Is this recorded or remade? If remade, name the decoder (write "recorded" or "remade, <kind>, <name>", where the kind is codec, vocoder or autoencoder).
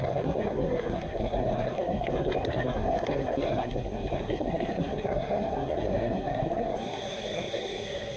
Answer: remade, codec, SNAC